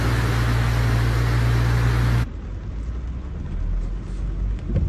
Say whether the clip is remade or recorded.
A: recorded